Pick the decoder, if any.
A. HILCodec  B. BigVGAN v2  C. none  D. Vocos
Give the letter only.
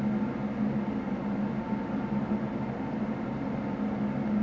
C